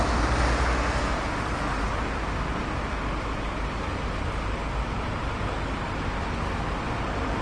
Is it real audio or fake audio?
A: real